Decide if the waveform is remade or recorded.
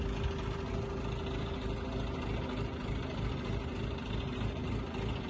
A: recorded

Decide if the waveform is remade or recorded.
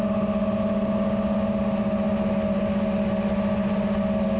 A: recorded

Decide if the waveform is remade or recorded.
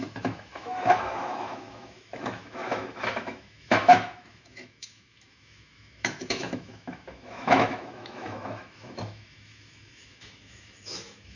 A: remade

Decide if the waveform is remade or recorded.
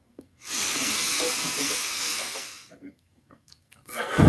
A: remade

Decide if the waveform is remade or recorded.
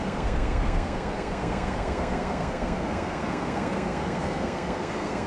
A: remade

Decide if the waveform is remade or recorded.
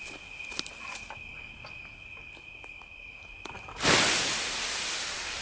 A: recorded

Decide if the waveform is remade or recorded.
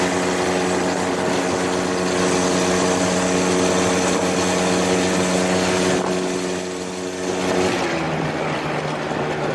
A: recorded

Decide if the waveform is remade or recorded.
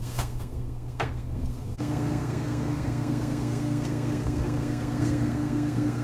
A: remade